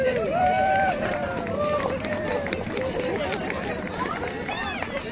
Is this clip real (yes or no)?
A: no